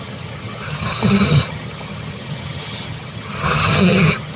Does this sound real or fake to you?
fake